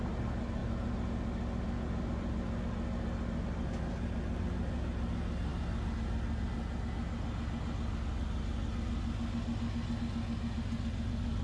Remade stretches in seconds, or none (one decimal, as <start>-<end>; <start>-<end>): none

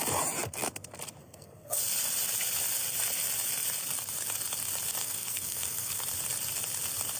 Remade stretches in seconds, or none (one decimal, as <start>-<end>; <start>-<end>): 1.2-1.8; 5.0-6.0

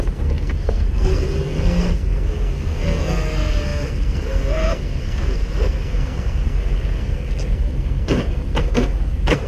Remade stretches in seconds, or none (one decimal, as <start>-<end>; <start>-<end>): 0.0-9.5

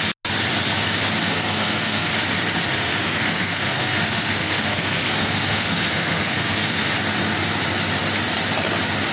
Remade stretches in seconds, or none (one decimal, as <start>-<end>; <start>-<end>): 1.2-2.1; 2.7-6.9

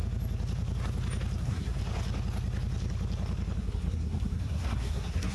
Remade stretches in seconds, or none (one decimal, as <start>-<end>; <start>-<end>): 1.4-1.8; 3.6-5.3

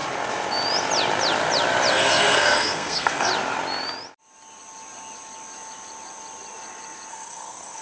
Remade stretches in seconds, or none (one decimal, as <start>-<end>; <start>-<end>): 1.9-3.3; 7.1-7.8

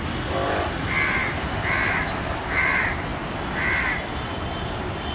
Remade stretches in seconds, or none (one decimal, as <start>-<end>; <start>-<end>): none

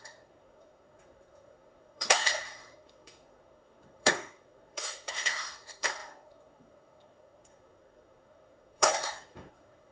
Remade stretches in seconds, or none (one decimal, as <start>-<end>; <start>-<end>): 0.0-9.9